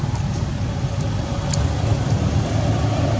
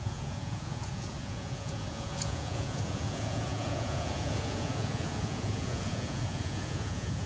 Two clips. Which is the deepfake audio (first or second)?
second